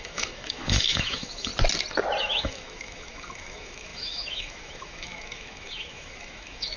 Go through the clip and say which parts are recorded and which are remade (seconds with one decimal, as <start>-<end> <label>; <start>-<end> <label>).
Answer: 0.0-1.5 remade; 1.5-2.2 recorded; 2.2-6.8 remade